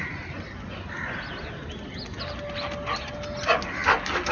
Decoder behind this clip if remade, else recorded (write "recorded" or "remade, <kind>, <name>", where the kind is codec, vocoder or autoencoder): recorded